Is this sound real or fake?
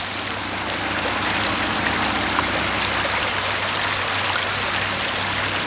real